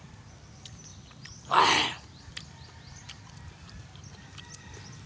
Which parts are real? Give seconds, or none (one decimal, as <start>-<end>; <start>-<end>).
0.0-5.1